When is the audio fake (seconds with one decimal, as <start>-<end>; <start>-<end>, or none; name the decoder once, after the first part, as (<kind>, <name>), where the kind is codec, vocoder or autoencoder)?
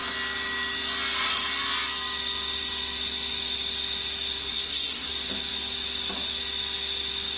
4.4-5.1 (codec, SNAC)